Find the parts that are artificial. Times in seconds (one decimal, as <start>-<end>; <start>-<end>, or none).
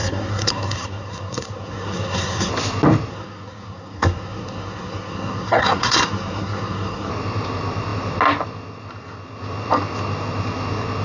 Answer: 0.0-2.5; 3.1-7.1